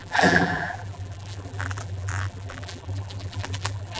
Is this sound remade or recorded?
remade